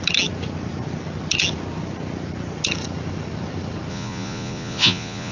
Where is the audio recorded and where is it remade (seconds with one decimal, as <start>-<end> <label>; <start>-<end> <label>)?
0.0-3.9 recorded; 3.9-5.3 remade